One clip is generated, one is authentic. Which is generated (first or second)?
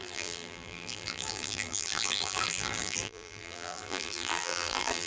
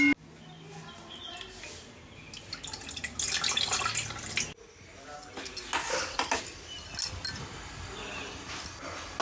first